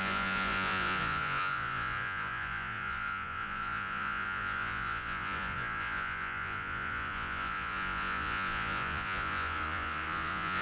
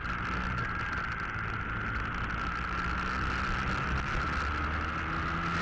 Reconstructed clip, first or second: first